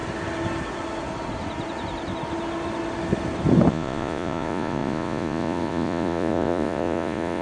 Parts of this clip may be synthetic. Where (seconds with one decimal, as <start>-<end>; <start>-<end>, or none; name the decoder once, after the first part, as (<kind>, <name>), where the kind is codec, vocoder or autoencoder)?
3.7-7.4 (vocoder, Vocos)